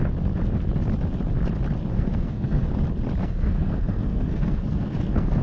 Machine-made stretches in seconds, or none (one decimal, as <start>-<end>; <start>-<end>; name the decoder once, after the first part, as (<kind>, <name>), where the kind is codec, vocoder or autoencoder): 1.9-2.7 (codec, SNAC); 3.2-5.4